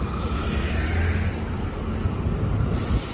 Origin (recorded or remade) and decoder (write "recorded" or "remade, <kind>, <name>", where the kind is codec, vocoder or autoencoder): recorded